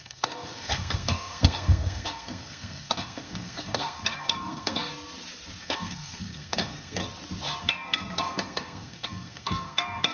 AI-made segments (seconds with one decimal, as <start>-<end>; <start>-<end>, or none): 0.0-4.9; 5.6-7.0; 7.6-10.1